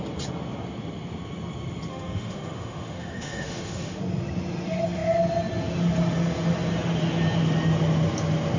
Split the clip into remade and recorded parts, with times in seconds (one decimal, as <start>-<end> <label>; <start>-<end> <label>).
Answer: 0.0-1.9 recorded; 1.9-4.0 remade; 4.0-8.6 recorded